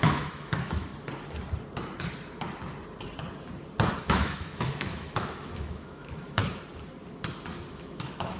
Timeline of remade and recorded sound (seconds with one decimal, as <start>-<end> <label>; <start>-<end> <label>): 0.0-0.9 remade; 0.9-4.0 recorded; 4.0-6.4 remade; 6.4-7.7 recorded; 7.7-8.4 remade